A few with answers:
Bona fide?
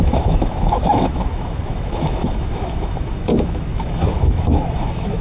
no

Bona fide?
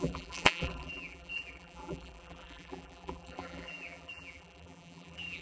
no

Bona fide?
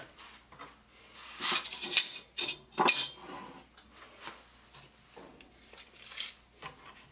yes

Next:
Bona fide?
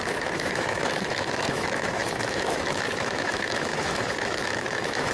no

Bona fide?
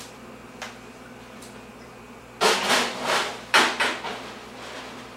no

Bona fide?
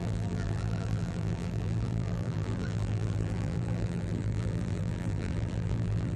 no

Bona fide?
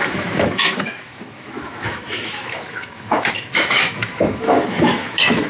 no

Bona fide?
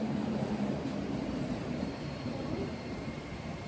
no